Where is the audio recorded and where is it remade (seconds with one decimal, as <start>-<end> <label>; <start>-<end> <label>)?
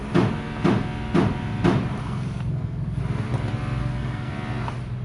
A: 0.0-2.0 recorded; 2.0-3.0 remade; 3.0-3.8 recorded; 3.8-4.3 remade; 4.3-5.0 recorded